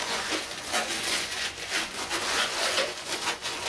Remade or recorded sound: remade